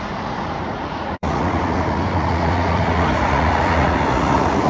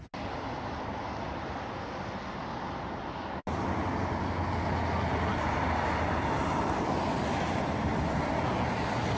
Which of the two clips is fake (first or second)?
first